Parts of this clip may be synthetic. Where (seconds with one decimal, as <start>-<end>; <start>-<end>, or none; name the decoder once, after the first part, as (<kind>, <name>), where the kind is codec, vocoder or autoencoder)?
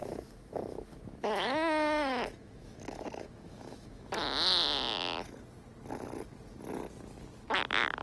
0.0-4.1 (autoencoder, DAC-VAE)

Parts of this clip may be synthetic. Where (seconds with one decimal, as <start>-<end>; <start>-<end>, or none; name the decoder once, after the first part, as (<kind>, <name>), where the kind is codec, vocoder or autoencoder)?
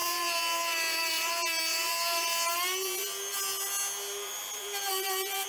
none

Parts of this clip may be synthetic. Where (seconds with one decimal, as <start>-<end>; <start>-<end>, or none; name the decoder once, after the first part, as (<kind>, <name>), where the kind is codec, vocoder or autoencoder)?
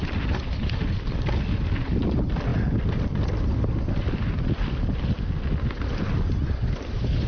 0.0-2.5 (vocoder, BigVGAN v2); 4.0-7.3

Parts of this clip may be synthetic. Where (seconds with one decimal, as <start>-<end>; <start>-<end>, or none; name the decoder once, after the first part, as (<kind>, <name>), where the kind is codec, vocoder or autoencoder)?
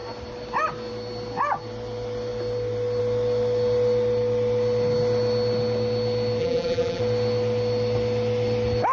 6.4-7.0 (vocoder, BigVGAN v2)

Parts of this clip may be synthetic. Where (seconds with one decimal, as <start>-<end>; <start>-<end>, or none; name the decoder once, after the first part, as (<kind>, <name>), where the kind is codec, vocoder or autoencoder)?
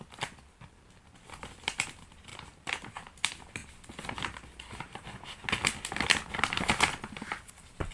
none